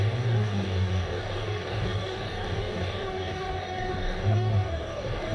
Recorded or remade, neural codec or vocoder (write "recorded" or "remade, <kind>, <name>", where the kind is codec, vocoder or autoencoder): remade, codec, DAC